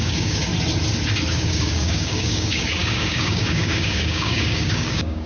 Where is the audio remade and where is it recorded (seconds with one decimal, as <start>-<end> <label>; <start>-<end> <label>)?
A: 0.0-0.5 remade; 0.5-1.3 recorded; 1.3-5.3 remade